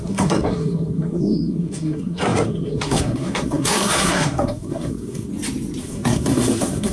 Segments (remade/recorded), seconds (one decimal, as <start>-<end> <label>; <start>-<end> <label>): 0.0-5.3 remade; 5.3-5.8 recorded; 5.8-6.9 remade